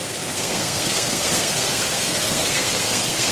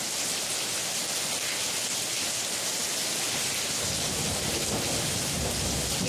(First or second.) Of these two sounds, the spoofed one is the first